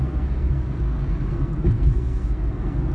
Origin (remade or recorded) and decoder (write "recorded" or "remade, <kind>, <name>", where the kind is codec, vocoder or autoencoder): remade, codec, SNAC